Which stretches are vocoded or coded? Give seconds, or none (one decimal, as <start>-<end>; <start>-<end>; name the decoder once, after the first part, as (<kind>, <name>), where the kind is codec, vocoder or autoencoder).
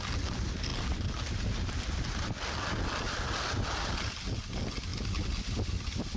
none